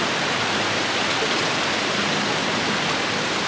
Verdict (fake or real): real